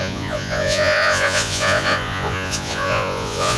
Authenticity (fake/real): fake